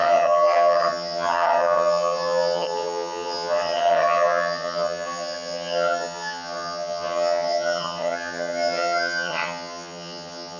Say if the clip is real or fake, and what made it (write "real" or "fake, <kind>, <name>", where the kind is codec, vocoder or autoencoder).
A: fake, vocoder, HiFi-GAN